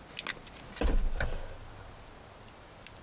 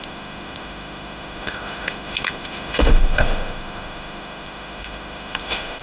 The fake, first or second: second